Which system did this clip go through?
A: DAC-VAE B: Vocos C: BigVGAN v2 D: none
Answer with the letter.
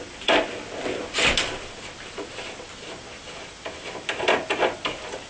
D